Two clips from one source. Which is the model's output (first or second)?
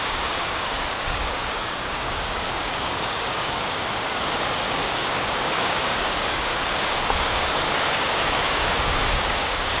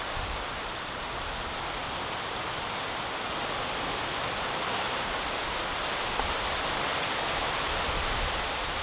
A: first